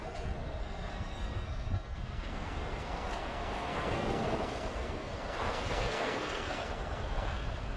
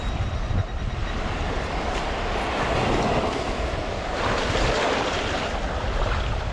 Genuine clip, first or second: second